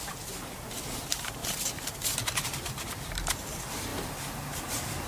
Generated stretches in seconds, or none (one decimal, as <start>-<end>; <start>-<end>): 0.0-5.1

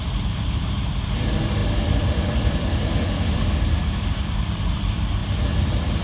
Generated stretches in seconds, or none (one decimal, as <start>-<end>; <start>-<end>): 0.0-5.2

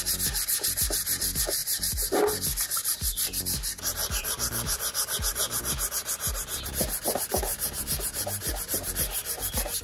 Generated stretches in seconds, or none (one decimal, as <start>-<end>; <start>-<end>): 4.0-5.7; 7.5-8.9

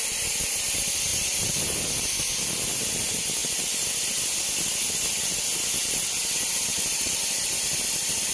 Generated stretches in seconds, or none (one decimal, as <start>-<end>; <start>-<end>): 1.1-1.6; 6.7-7.6

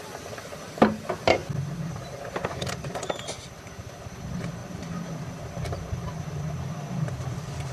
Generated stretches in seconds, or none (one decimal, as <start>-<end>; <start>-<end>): 4.6-5.4